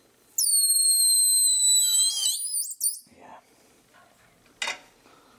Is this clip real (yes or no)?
yes